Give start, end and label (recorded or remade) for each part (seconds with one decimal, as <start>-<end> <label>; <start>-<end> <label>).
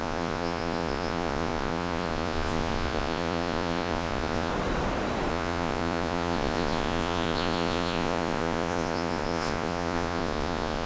0.0-4.5 remade; 4.5-5.3 recorded; 5.3-10.9 remade